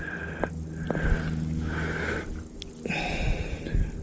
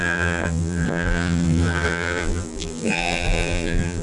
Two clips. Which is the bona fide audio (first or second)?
first